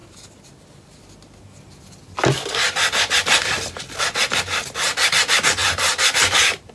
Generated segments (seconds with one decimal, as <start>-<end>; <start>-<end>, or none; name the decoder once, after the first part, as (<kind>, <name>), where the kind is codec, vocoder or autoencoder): 5.6-6.7 (vocoder, BigVGAN v2)